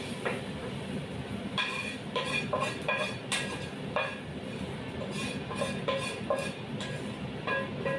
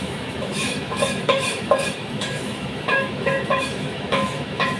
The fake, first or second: second